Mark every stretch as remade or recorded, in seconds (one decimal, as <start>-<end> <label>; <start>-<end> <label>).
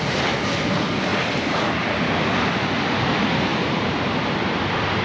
0.0-3.5 recorded; 3.5-5.0 remade